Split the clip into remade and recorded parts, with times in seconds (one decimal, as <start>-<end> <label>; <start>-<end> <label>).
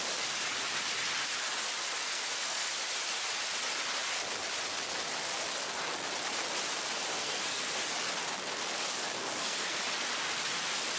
0.0-2.0 recorded; 2.0-2.7 remade; 2.7-7.1 recorded; 7.1-7.8 remade; 7.8-9.2 recorded; 9.2-9.8 remade; 9.8-11.0 recorded